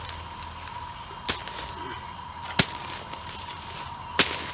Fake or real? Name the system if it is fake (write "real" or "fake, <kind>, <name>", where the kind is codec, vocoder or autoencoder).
real